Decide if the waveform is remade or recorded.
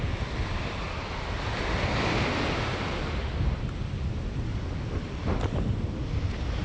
recorded